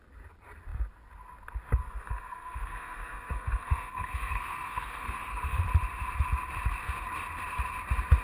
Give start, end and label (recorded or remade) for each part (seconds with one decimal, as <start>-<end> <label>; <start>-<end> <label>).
0.0-1.8 recorded; 1.8-5.6 remade; 5.6-8.2 recorded